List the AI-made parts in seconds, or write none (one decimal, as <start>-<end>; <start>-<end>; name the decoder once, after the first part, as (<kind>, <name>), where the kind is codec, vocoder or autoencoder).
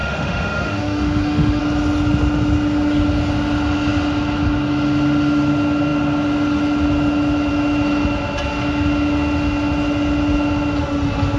0.0-1.6 (autoencoder, DAC-VAE)